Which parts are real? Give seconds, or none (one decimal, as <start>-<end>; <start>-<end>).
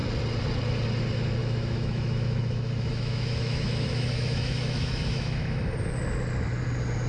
0.0-1.4; 5.7-7.1